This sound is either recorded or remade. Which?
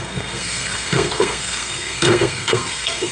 remade